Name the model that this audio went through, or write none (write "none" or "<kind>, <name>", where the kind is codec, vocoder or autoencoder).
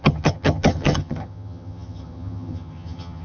vocoder, HiFi-GAN